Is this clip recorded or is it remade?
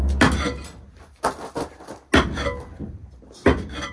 recorded